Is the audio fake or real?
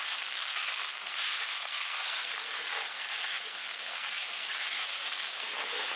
fake